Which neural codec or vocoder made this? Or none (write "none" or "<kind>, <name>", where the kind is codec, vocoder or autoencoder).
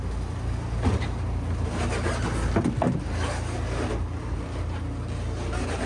none